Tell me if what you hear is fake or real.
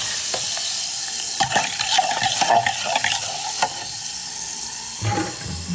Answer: real